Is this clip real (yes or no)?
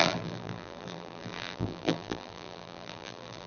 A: no